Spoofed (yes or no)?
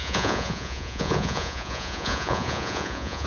yes